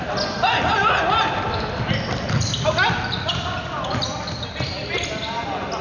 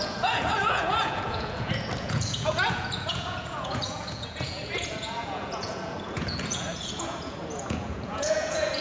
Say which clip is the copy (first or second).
second